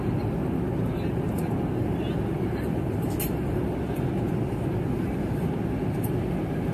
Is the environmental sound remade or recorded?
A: recorded